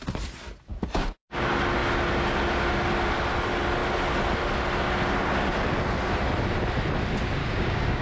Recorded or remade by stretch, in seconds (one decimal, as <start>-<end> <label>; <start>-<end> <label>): 0.0-0.7 recorded; 0.7-1.4 remade; 1.4-7.4 recorded; 7.4-8.0 remade